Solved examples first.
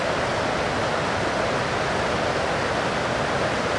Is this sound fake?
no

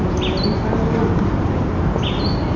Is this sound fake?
no